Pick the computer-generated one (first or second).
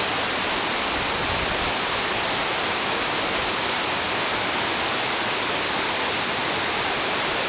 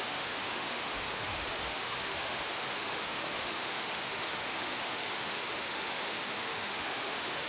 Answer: second